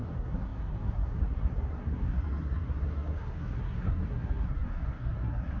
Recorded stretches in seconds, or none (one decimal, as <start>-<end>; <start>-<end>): none